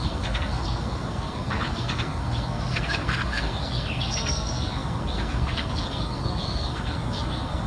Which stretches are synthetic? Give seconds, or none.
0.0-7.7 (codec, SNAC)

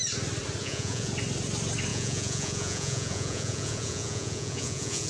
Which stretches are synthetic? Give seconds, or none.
0.6-1.1 (vocoder, Vocos); 1.9-5.1

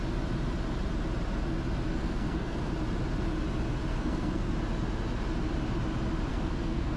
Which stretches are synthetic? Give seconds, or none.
1.9-2.7 (codec, SNAC); 3.9-4.5; 6.3-7.0